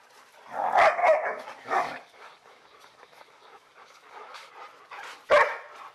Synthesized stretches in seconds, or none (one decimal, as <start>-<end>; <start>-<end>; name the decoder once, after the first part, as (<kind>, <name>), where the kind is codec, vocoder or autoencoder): 1.0-4.5 (codec, DAC)